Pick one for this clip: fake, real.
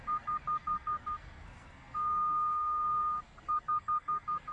fake